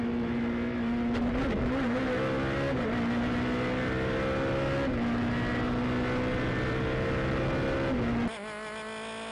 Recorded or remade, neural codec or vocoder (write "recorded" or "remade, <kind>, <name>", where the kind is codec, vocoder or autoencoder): recorded